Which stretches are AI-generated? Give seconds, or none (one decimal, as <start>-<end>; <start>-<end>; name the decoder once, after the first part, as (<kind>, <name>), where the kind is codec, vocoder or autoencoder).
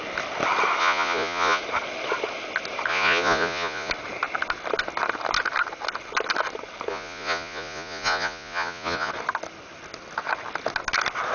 0.8-1.6 (vocoder, Vocos); 2.9-3.9; 6.9-9.1